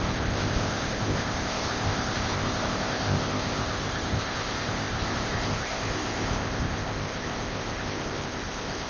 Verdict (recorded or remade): remade